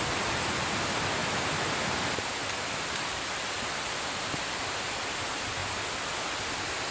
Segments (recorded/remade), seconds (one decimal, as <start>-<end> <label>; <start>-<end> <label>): 0.0-1.2 recorded; 1.2-1.7 remade; 1.7-2.4 recorded; 2.4-3.5 remade; 3.5-5.6 recorded; 5.6-6.9 remade